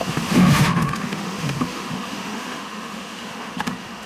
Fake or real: fake